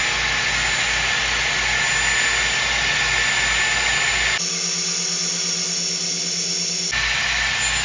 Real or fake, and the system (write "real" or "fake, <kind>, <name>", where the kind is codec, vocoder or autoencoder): real